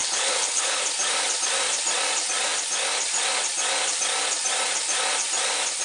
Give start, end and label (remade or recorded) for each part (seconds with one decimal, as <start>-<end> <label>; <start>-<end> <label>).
0.0-0.8 remade; 0.8-5.8 recorded